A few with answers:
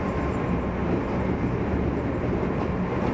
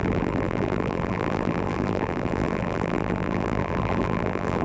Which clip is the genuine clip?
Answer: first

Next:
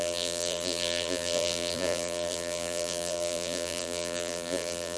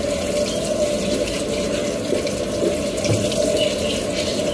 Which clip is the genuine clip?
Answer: second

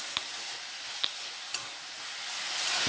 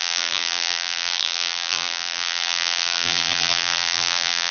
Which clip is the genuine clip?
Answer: first